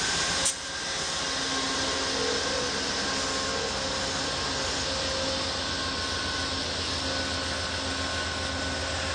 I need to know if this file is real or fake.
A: real